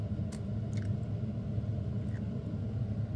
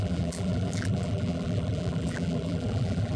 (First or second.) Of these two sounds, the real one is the first